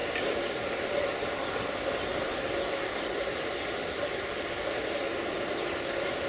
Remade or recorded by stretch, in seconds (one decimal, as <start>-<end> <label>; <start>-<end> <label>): 0.0-0.6 remade; 0.6-6.3 recorded